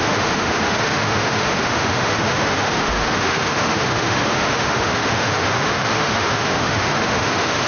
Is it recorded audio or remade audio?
remade